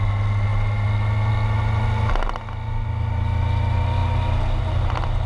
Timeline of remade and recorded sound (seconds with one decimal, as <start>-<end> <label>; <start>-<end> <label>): 0.0-5.3 recorded

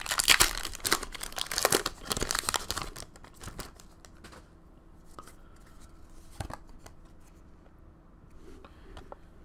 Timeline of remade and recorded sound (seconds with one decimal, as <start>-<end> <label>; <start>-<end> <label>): 0.0-1.6 recorded; 1.6-2.3 remade; 2.3-9.4 recorded

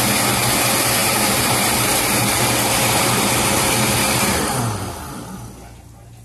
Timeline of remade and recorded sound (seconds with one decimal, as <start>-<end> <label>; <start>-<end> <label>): 0.0-1.0 recorded; 1.0-4.6 remade; 4.6-6.2 recorded

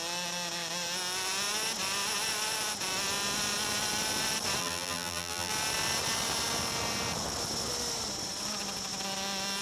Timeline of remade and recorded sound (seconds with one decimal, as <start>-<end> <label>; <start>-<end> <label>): 0.0-4.6 recorded; 4.6-5.5 remade; 5.5-9.6 recorded

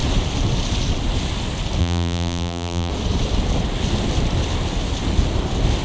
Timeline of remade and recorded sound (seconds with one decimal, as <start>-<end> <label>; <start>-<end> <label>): 0.0-1.8 recorded; 1.8-2.9 remade; 2.9-5.8 recorded

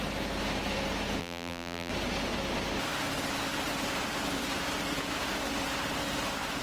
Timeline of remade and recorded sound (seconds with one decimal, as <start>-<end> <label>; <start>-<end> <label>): 0.0-1.2 recorded; 1.2-1.9 remade; 1.9-6.6 recorded